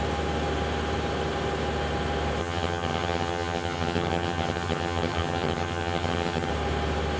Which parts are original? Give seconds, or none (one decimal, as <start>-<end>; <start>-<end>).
0.0-2.4; 6.5-7.2